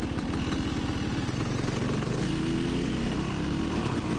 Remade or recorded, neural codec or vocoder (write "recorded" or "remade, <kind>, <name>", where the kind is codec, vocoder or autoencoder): recorded